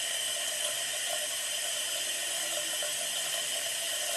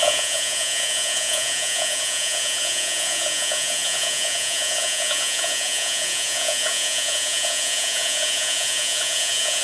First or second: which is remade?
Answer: second